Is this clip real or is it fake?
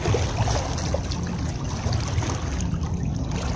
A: real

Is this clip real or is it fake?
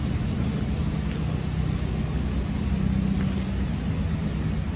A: real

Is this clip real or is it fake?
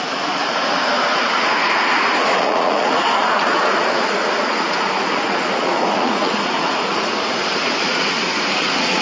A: fake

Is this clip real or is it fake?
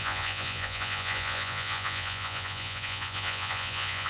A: fake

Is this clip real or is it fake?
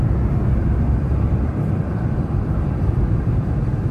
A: fake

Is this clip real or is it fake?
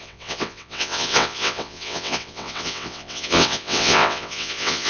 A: fake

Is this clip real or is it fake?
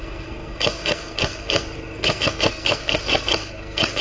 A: fake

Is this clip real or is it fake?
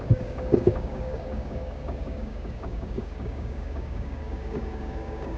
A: fake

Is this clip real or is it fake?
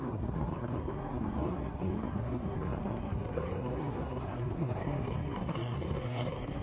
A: fake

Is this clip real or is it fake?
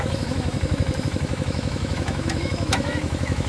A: fake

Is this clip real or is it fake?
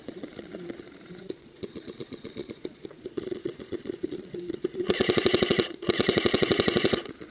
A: fake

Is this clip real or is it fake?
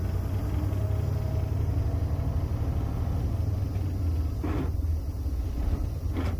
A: real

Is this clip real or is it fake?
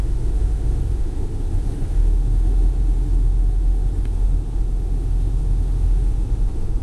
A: fake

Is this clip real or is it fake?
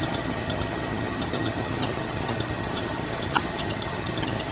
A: fake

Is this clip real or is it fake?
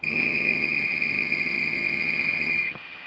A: fake